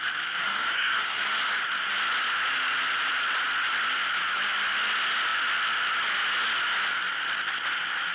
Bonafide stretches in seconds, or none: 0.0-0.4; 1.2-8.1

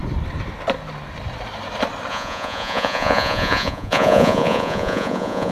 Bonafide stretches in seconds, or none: 0.0-2.1

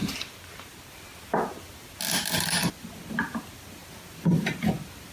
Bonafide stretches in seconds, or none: 0.0-5.1

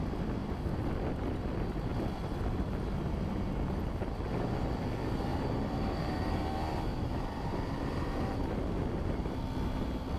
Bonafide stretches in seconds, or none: 0.0-5.3; 6.4-6.9; 8.4-10.2

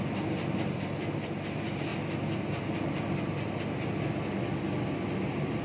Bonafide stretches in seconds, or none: 0.0-5.6

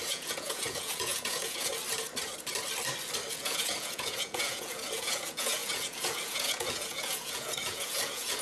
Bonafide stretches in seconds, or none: 1.7-3.3

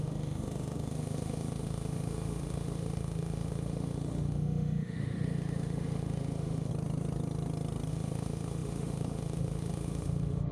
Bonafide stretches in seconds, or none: 6.7-7.9